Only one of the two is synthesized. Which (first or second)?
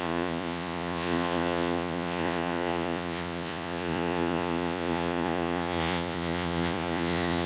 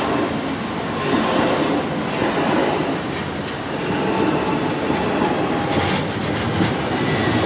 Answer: first